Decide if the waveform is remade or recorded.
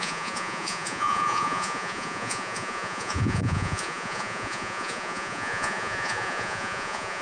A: remade